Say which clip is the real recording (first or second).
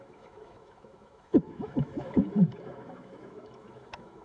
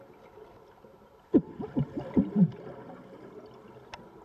second